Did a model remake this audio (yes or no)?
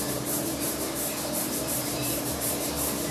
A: yes